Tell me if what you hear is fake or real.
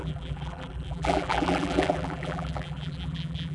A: fake